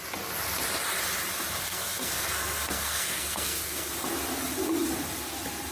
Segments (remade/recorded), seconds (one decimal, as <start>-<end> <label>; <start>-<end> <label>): 0.0-1.7 recorded; 1.7-3.9 remade; 3.9-5.7 recorded